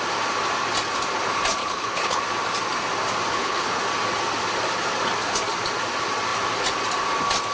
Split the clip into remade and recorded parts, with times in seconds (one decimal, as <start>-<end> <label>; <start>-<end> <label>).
0.0-1.6 recorded; 1.6-2.2 remade; 2.2-3.3 recorded; 3.3-3.8 remade; 3.8-7.5 recorded